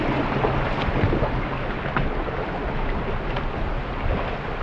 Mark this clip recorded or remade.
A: recorded